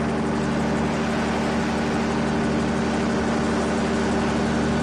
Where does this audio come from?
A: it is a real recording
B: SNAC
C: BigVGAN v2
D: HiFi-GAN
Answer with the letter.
A